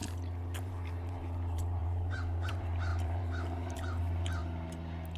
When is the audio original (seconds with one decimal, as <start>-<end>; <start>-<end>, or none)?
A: 0.0-0.6; 4.4-5.2

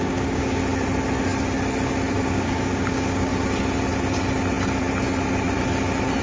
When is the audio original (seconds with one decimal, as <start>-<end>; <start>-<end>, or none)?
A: 0.6-2.2; 3.3-6.2

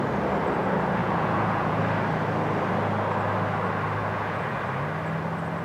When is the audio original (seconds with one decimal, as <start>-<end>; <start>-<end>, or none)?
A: 0.0-1.0; 1.8-4.0; 4.6-5.6

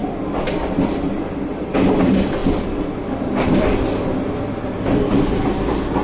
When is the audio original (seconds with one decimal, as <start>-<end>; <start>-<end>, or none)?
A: 0.0-6.0